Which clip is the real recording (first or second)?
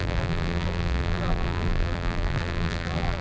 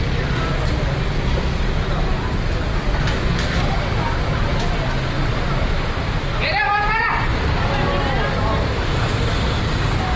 second